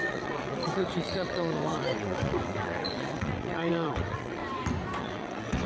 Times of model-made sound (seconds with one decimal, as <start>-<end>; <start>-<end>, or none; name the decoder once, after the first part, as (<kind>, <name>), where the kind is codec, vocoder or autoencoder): 0.0-4.4 (vocoder, WaveNeXt); 5.0-5.7